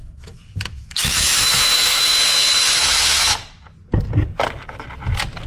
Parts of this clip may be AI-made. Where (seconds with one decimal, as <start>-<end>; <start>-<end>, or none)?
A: 0.0-3.3